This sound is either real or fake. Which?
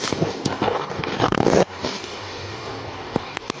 fake